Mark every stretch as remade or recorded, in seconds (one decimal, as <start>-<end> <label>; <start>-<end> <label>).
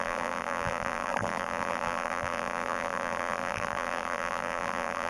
0.0-5.1 remade